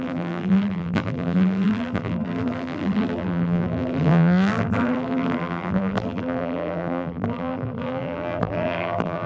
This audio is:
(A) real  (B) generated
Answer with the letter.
B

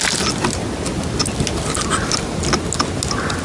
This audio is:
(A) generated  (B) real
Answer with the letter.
B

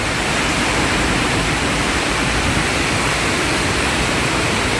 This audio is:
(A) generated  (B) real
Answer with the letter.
A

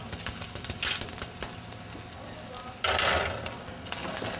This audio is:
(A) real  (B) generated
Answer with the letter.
A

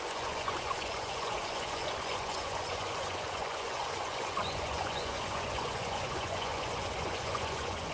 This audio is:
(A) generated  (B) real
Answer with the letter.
A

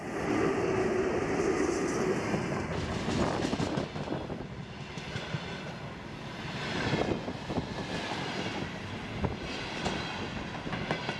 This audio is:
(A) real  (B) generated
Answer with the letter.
A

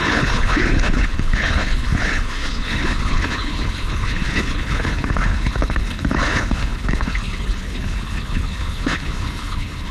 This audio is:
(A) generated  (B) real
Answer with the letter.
A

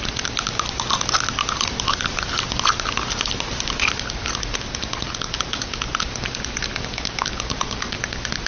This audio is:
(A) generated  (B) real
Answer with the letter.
B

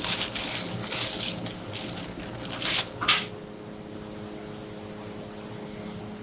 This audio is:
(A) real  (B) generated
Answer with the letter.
A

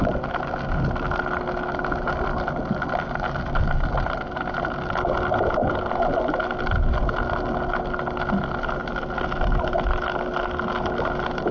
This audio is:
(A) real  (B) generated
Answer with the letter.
A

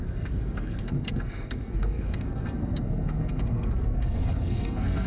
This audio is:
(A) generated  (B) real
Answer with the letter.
A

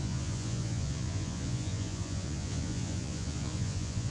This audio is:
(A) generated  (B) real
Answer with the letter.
A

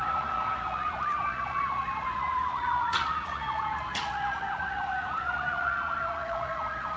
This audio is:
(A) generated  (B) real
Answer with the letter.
A